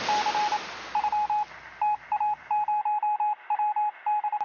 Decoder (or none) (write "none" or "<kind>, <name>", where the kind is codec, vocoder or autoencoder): none